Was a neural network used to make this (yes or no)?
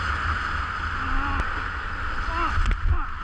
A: no